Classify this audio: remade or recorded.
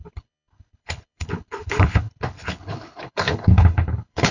remade